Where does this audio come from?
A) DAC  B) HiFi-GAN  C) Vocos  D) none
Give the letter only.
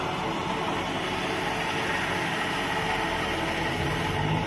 D